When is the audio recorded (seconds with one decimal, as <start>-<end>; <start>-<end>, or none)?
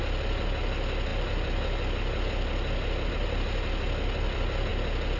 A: 0.0-5.2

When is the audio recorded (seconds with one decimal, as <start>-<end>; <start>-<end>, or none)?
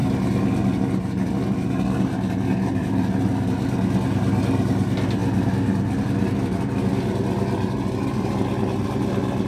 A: 0.0-9.5